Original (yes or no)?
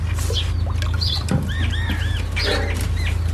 yes